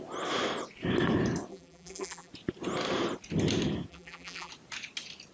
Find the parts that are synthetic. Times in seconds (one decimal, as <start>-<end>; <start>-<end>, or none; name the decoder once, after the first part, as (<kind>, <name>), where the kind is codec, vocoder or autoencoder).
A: 1.5-2.3 (vocoder, BigVGAN v2); 3.9-4.5